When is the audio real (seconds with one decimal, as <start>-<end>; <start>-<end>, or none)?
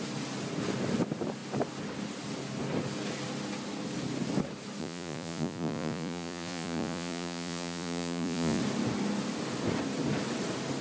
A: 0.0-4.8; 8.6-10.8